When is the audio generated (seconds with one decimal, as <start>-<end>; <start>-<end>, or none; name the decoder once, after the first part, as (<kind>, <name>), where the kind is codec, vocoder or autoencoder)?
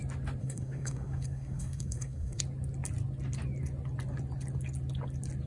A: 0.4-2.4 (codec, SNAC)